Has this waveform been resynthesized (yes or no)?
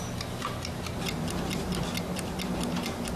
no